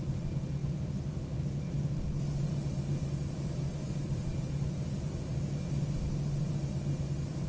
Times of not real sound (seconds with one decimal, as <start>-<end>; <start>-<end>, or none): none